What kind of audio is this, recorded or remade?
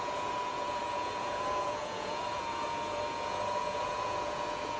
remade